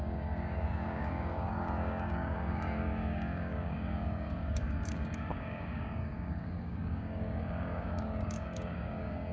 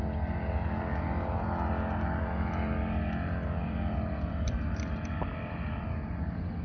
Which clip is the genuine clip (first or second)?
second